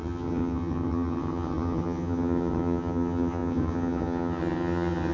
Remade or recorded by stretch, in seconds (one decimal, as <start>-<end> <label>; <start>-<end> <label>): 0.0-5.1 remade